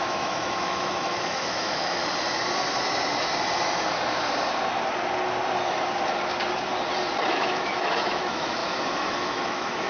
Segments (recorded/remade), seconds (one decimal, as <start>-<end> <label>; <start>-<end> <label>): 0.0-2.0 remade; 2.0-7.3 recorded; 7.3-9.9 remade

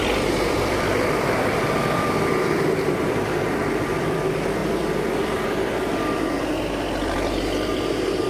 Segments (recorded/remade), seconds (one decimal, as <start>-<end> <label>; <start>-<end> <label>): 0.0-4.6 remade; 4.6-5.2 recorded; 5.2-5.7 remade; 5.7-7.7 recorded; 7.7-8.3 remade

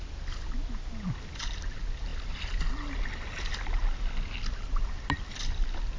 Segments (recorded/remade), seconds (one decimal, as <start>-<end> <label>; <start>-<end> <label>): 0.0-6.0 recorded

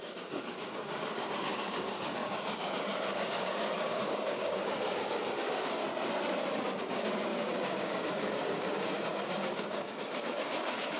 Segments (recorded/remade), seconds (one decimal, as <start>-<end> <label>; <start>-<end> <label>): 0.0-5.8 remade; 5.8-6.8 recorded; 6.8-11.0 remade

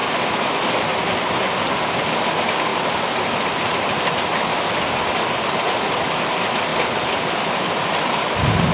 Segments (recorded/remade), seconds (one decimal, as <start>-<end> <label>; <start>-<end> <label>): 0.0-6.7 recorded; 6.7-7.9 remade; 7.9-8.7 recorded

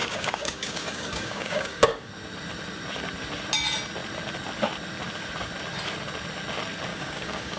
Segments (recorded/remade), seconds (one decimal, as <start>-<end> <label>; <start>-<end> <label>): 0.0-2.1 remade; 2.1-6.9 recorded; 6.9-7.6 remade

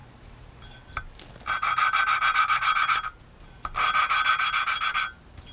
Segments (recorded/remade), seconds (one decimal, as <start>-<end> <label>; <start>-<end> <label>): 0.0-5.5 recorded